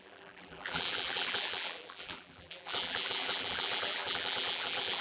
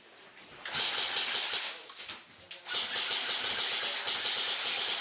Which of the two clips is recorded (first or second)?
second